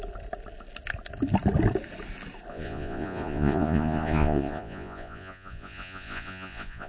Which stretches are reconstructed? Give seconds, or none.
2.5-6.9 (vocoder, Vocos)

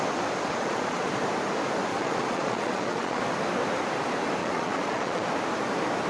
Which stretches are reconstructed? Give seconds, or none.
0.5-1.1 (vocoder, Vocos); 1.9-3.2; 4.4-5.3

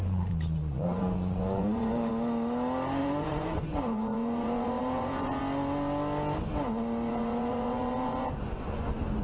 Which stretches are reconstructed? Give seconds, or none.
0.0-2.1 (vocoder, Vocos); 3.0-5.4; 7.1-9.2

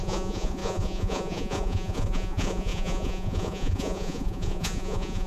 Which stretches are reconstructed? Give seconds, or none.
0.0-5.3 (vocoder, Vocos)

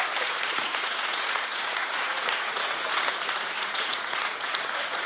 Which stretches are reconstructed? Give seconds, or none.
0.0-5.1 (vocoder, Vocos)

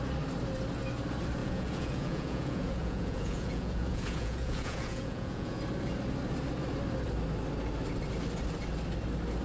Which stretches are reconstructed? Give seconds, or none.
1.4-5.6 (vocoder, Vocos)